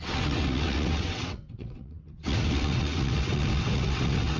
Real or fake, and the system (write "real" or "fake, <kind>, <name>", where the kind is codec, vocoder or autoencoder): fake, vocoder, WaveNeXt